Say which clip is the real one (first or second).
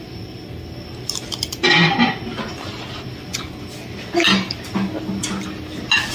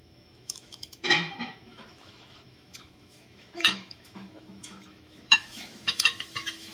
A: first